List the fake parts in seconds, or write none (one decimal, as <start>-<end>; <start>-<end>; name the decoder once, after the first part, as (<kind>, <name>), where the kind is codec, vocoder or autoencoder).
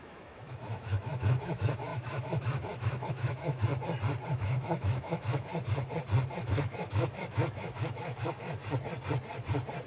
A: 0.0-3.7 (autoencoder, DAC-VAE); 4.3-5.5; 6.4-8.6